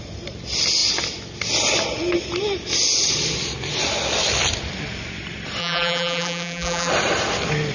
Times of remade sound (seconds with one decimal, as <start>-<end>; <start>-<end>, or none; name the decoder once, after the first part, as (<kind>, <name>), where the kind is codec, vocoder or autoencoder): 5.6-6.9 (vocoder, BigVGAN v2)